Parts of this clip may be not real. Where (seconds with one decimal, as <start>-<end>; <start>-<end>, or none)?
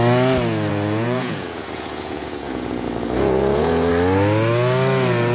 0.7-3.9